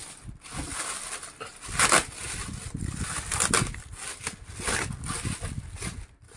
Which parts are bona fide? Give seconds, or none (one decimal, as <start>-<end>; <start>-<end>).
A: 0.0-6.4